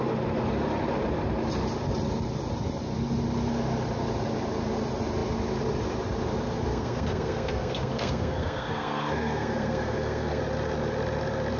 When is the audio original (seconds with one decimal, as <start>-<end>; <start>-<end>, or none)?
0.0-6.7; 10.4-11.6